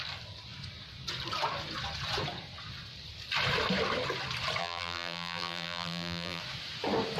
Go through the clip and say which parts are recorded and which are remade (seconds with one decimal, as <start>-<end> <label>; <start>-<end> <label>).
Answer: 0.0-4.6 recorded; 4.6-6.4 remade; 6.4-7.2 recorded